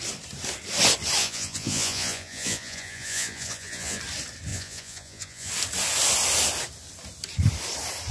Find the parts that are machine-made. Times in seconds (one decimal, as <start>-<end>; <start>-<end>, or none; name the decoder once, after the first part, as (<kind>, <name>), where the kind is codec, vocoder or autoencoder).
1.2-4.0 (vocoder, Vocos); 4.5-5.5